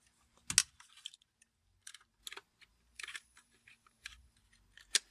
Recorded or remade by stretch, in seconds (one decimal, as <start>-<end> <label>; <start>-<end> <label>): 0.0-0.6 recorded; 0.6-2.2 remade; 2.2-2.7 recorded; 2.7-4.5 remade; 4.5-5.1 recorded